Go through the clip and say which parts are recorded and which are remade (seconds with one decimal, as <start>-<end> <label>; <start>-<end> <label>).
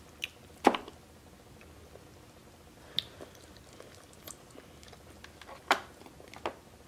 0.0-6.9 recorded